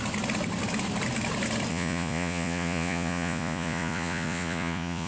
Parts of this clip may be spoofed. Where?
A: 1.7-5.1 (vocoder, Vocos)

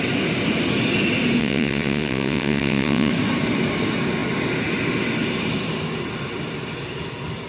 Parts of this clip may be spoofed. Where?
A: 1.4-3.1 (vocoder, WaveNeXt)

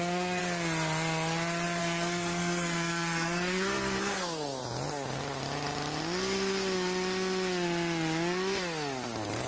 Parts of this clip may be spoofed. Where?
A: 0.0-0.4 (codec, SNAC); 1.8-4.6

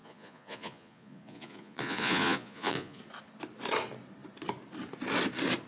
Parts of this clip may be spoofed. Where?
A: 0.0-3.0 (vocoder, Vocos)